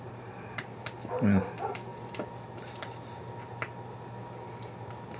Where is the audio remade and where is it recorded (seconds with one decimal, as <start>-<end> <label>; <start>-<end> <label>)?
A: 0.0-5.2 recorded